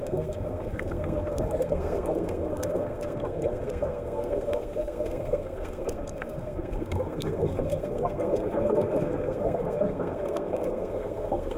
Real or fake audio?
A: fake